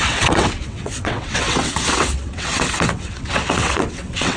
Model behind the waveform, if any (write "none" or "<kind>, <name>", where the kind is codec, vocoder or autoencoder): vocoder, WaveNeXt